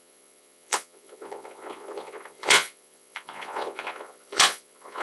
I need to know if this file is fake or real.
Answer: fake